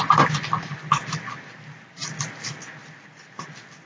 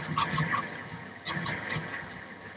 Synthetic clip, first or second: second